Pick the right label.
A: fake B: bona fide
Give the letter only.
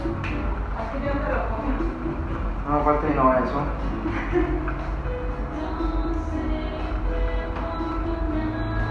B